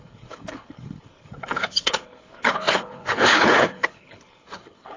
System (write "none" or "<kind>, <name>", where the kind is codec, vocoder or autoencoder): codec, HILCodec